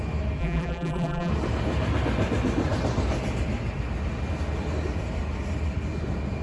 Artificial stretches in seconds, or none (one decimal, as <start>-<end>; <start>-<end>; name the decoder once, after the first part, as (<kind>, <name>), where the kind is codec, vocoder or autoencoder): 0.4-1.3 (vocoder, BigVGAN v2)